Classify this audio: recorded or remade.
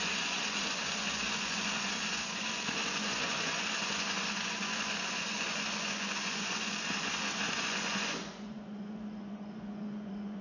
remade